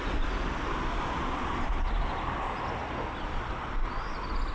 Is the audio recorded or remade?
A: recorded